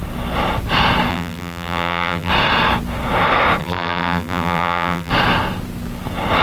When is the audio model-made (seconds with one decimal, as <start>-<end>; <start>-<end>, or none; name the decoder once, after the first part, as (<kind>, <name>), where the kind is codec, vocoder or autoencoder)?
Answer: 1.1-2.3 (vocoder, BigVGAN v2); 3.6-5.1